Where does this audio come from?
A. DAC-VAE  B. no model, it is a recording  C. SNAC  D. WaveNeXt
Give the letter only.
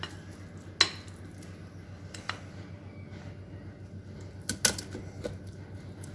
B